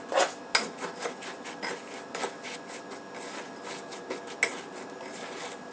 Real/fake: real